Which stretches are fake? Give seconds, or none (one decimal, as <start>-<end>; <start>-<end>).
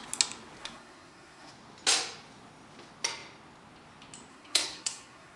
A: 0.6-1.5; 4.3-5.4